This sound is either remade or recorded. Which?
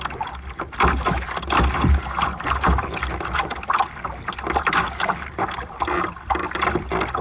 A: recorded